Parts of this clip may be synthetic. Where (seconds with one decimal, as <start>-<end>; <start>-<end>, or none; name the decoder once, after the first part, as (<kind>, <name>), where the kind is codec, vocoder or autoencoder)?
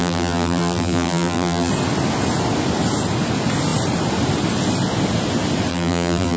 0.0-1.7 (vocoder, BigVGAN v2); 5.7-6.4